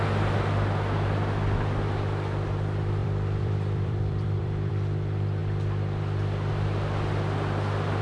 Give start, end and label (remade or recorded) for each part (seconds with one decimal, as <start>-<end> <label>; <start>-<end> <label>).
0.0-3.0 recorded; 3.0-4.7 remade; 4.7-8.0 recorded